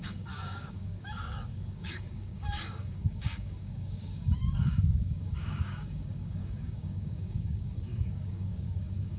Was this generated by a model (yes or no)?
yes